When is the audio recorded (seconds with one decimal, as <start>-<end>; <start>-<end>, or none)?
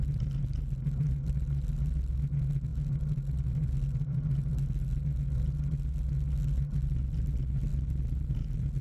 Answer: 0.0-8.8